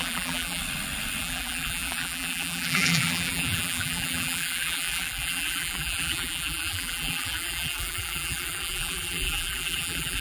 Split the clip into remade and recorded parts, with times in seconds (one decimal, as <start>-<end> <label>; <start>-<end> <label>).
0.0-0.6 remade; 0.6-1.2 recorded; 1.2-10.2 remade